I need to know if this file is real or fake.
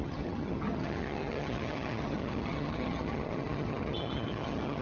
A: fake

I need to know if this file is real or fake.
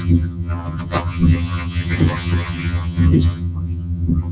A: fake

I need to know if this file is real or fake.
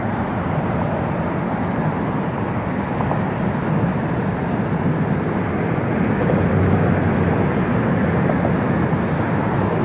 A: real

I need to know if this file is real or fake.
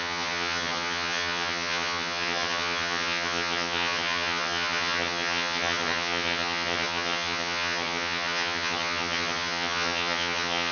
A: fake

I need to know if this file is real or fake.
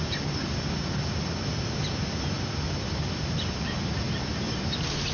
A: real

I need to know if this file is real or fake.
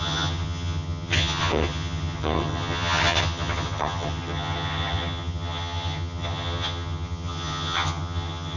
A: fake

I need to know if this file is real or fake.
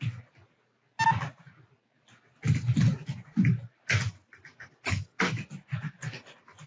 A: real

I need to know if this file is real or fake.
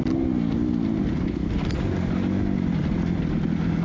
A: real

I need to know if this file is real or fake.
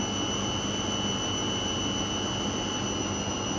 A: real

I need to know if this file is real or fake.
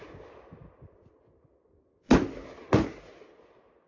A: real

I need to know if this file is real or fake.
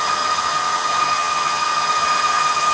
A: fake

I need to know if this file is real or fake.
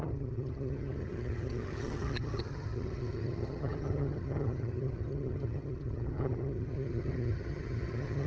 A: fake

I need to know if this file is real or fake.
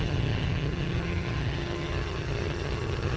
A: fake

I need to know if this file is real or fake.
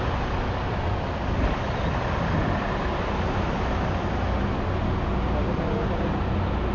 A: real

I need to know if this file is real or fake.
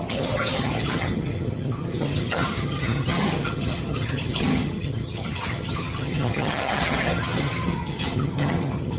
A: fake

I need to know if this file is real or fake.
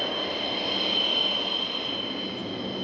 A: real